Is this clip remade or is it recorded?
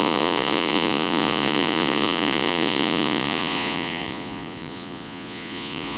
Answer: remade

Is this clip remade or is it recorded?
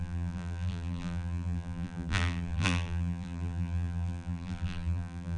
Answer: remade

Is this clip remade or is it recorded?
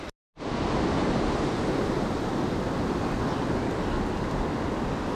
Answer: recorded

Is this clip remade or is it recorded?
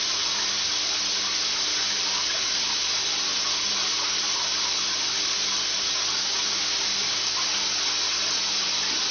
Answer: recorded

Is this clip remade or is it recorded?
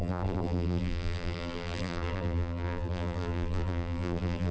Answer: remade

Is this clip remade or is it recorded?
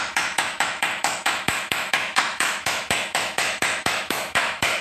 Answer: remade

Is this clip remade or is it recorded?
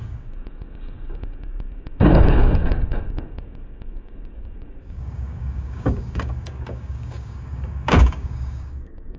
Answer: remade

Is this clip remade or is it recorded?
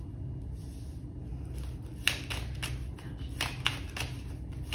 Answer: recorded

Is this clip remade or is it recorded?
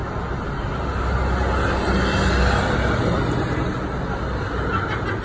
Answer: recorded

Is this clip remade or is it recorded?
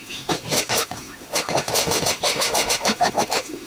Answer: remade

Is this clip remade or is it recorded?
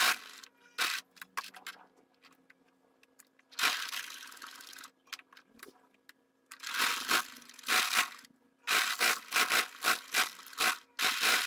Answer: recorded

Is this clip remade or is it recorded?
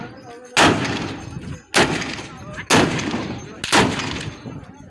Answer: recorded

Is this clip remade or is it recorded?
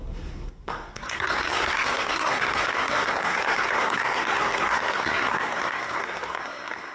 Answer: remade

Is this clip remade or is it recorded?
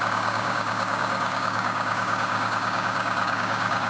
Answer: remade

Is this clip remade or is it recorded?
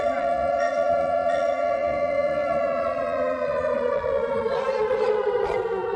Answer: remade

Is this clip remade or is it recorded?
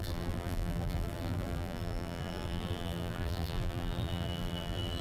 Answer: remade